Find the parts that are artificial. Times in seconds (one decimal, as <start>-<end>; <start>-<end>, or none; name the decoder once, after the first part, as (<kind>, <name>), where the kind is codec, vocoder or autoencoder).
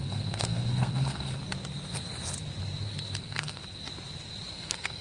0.0-1.4 (codec, SNAC); 3.2-3.6; 4.5-5.0